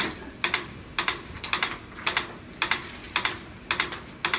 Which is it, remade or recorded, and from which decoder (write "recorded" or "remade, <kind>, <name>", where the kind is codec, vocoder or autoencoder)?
recorded